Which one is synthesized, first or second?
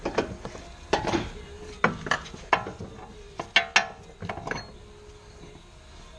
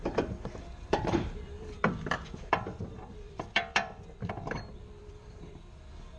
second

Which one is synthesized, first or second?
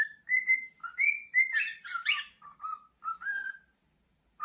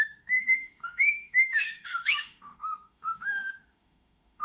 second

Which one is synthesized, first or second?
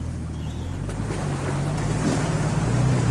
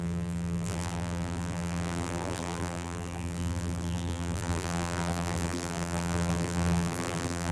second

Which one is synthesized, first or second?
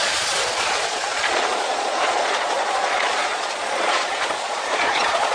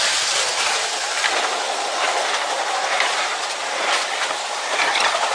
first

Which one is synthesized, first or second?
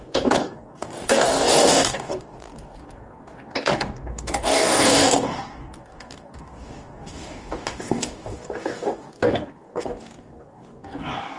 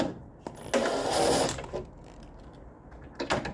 first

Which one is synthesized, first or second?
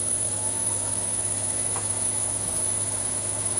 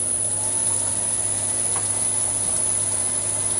first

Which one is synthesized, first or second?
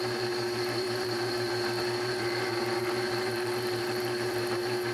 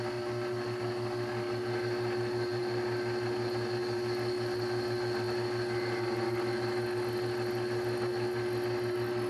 first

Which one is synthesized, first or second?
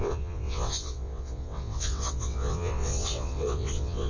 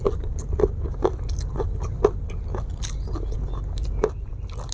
first